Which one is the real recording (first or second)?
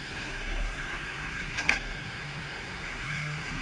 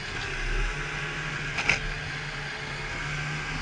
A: second